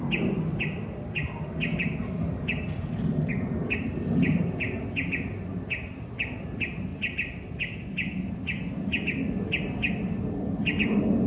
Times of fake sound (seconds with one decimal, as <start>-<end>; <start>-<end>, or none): none